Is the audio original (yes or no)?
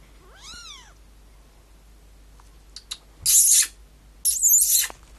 yes